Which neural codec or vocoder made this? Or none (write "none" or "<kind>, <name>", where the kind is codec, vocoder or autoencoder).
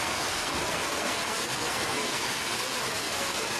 codec, SNAC